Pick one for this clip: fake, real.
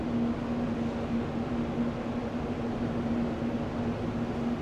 real